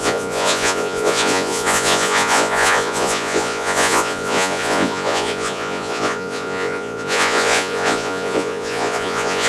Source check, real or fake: fake